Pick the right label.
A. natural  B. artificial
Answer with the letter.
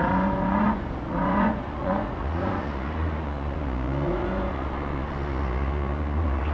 B